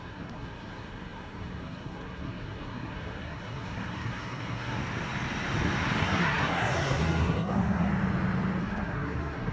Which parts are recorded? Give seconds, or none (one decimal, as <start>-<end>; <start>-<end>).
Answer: 4.8-6.0; 7.9-8.6